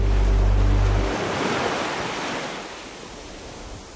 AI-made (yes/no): no